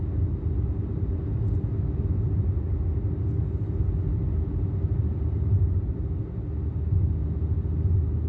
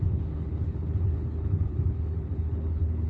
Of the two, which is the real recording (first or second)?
first